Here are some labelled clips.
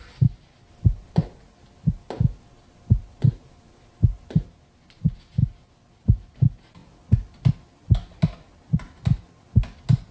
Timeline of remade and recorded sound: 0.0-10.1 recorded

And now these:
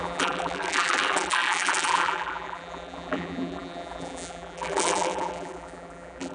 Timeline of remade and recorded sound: 0.0-6.3 remade

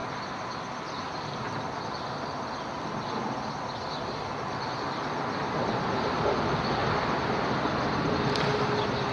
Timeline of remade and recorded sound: 0.0-9.1 recorded

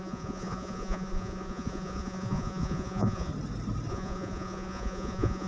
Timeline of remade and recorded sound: 0.0-3.3 remade; 3.3-3.9 recorded; 3.9-5.5 remade

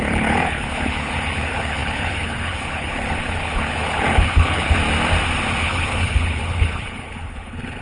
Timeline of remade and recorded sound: 0.0-4.8 remade; 4.8-5.6 recorded; 5.6-7.8 remade

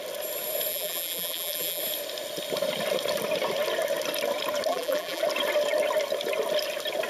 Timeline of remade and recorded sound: 0.0-0.7 recorded; 0.7-1.8 remade; 1.8-4.7 recorded; 4.7-5.2 remade; 5.2-7.1 recorded

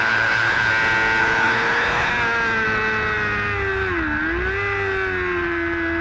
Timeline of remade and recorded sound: 0.0-0.7 remade; 0.7-1.2 recorded; 1.2-2.1 remade; 2.1-6.0 recorded

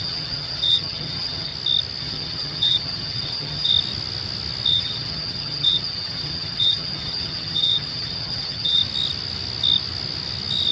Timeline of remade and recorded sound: 0.0-1.5 remade; 1.5-2.0 recorded; 2.0-3.7 remade; 3.7-4.7 recorded; 4.7-8.8 remade; 8.8-10.7 recorded